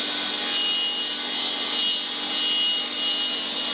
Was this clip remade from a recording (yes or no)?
no